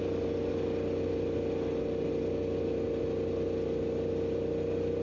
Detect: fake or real real